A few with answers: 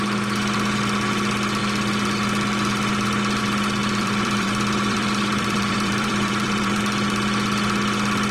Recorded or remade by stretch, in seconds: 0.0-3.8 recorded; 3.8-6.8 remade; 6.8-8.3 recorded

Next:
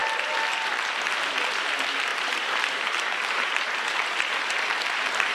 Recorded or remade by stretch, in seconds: 0.0-1.6 recorded; 1.6-5.3 remade

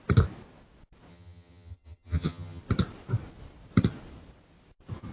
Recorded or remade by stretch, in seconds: 0.0-1.1 recorded; 1.1-2.6 remade; 2.6-5.1 recorded